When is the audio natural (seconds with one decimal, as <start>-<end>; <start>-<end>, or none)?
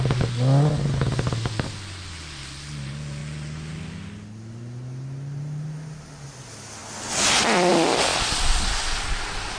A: 0.0-9.6